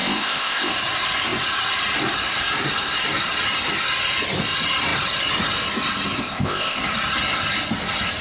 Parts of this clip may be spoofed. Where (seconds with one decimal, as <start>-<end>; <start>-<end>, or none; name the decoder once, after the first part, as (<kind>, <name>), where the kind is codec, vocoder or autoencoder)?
0.0-0.7 (codec, ZipCodec); 6.2-6.8